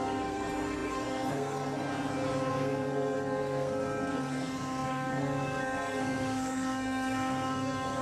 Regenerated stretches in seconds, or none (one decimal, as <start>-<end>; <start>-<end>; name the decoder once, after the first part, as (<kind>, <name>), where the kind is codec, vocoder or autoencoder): 0.0-1.9 (codec, SNAC); 2.5-8.0